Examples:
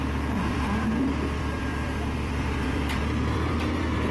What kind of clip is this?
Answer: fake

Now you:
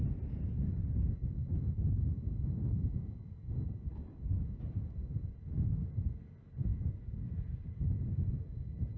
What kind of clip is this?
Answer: real